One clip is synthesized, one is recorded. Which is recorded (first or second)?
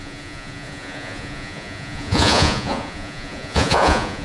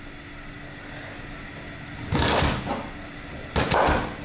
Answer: second